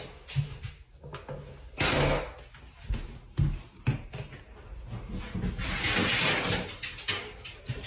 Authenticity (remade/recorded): recorded